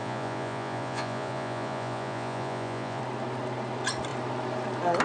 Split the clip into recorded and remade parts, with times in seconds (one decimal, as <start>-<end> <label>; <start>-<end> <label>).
0.0-3.0 remade; 3.0-5.0 recorded